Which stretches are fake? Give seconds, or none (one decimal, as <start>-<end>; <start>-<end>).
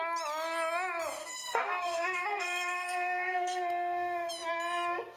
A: 1.2-4.3